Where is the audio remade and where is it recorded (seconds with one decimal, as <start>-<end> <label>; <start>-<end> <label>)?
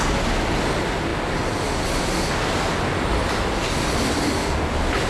0.0-5.1 recorded